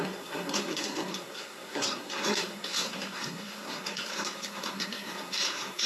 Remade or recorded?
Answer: remade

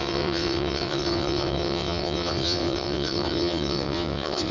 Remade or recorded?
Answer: remade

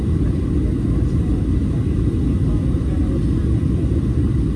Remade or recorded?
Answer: recorded